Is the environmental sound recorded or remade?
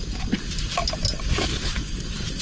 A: recorded